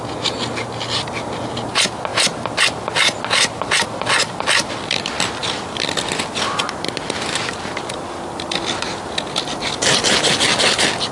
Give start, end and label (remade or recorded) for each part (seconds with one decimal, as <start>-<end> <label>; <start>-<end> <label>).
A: 0.0-11.1 recorded